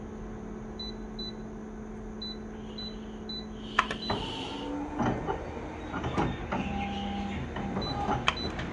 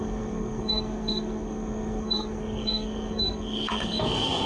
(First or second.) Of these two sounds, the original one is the first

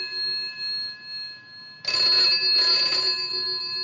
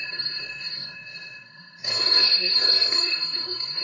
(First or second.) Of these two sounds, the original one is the first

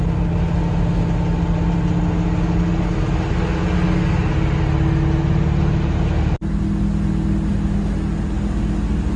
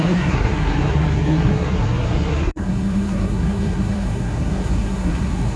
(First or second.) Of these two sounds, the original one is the first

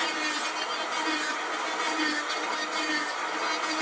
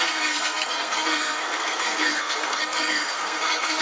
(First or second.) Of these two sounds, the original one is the first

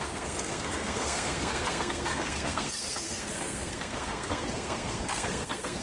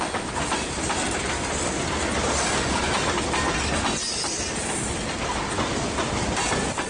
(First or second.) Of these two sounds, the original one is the second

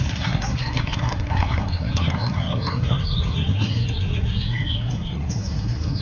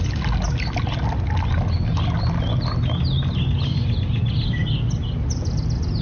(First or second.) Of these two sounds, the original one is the second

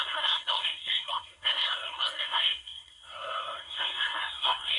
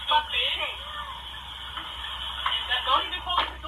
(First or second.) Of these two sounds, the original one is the second